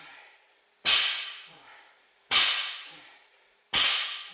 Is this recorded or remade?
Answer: remade